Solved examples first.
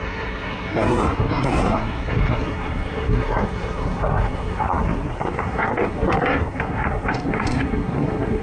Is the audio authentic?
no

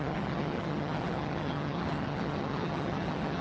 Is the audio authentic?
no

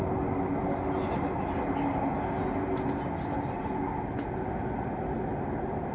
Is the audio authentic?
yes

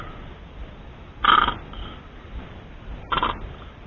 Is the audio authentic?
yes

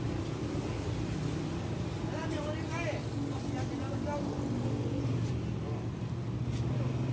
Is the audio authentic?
yes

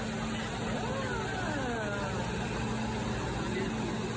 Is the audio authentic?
yes